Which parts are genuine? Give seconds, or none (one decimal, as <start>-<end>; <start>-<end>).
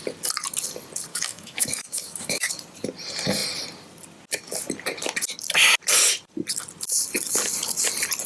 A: 0.0-1.1; 2.5-8.3